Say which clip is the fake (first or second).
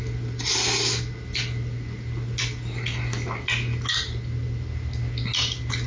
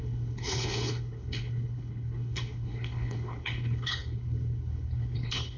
second